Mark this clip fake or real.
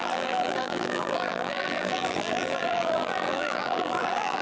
fake